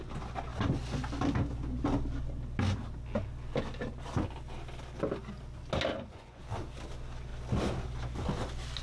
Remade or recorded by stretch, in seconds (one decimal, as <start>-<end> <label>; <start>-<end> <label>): 0.0-5.9 recorded; 5.9-6.4 remade; 6.4-8.8 recorded